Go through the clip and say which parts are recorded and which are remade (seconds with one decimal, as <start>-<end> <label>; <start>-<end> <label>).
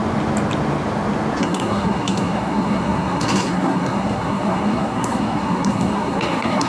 0.0-1.4 recorded; 1.4-6.7 remade